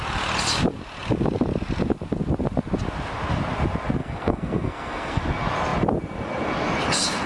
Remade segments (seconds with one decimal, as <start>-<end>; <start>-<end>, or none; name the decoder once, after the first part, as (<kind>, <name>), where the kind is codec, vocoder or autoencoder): 4.0-5.2 (codec, SNAC)

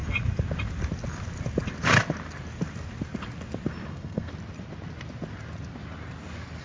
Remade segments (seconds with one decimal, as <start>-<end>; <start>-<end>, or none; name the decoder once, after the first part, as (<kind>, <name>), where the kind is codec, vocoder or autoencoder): 3.9-4.3 (codec, SNAC)

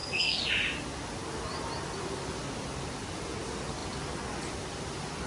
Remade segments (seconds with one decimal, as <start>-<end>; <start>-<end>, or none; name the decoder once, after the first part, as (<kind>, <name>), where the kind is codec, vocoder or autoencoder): 0.0-0.5 (codec, SNAC)

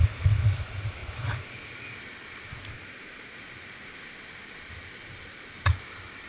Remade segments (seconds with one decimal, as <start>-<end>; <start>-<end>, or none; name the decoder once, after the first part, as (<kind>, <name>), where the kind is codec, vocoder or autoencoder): none

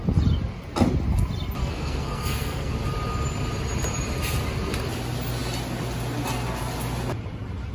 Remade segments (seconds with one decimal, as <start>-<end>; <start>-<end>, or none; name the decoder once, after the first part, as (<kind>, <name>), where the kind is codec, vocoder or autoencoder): 1.6-2.7 (codec, SNAC)